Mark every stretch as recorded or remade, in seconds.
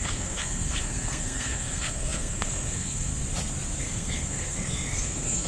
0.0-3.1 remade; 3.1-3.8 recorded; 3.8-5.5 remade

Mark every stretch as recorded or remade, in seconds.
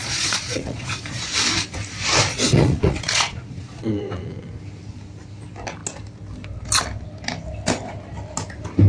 0.0-1.2 remade; 1.2-2.3 recorded; 2.3-4.2 remade; 4.2-8.9 recorded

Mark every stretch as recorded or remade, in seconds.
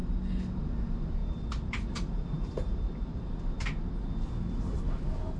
0.0-1.2 recorded; 1.2-3.3 remade; 3.3-5.4 recorded